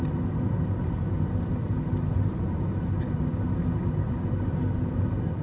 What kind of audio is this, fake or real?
real